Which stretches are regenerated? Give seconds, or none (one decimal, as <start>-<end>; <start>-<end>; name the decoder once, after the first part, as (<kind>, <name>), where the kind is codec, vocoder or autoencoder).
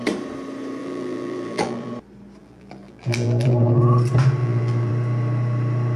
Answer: 0.8-1.9 (vocoder, BigVGAN v2); 2.4-3.8; 4.4-4.9